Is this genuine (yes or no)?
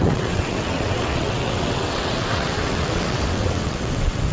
no